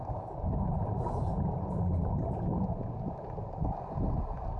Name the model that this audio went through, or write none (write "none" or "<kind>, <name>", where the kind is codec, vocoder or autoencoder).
none